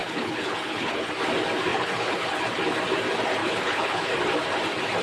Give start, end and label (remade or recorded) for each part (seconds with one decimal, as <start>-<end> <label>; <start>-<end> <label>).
0.0-1.1 remade; 1.1-1.7 recorded; 1.7-2.3 remade; 2.3-3.4 recorded; 3.4-4.1 remade; 4.1-5.0 recorded